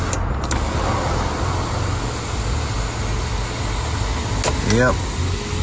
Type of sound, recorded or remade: recorded